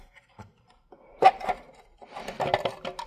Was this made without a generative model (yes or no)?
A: yes